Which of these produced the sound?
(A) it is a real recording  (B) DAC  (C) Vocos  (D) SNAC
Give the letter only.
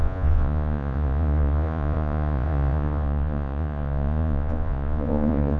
C